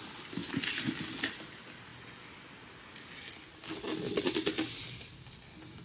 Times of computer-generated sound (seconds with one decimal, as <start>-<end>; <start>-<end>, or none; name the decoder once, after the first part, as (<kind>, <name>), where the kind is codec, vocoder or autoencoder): none